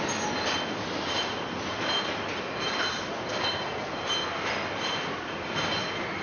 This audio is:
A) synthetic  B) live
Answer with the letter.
B